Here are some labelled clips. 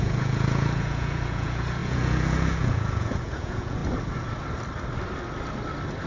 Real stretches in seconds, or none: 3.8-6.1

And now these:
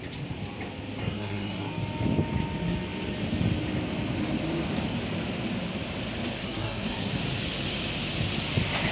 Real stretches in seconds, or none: 0.0-1.0; 1.7-6.4; 7.1-8.9